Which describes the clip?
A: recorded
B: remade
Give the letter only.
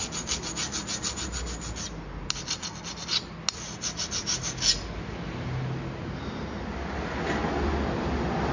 A